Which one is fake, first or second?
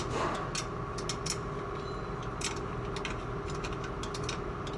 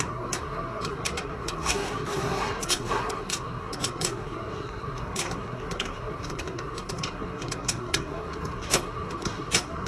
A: second